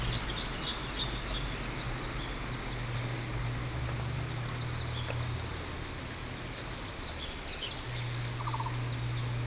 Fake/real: real